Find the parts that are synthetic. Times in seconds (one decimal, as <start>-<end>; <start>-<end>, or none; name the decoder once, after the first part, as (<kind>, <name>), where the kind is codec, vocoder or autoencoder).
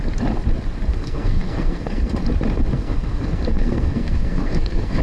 0.9-2.1 (codec, SNAC); 2.7-5.0